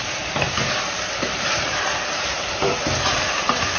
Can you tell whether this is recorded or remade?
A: remade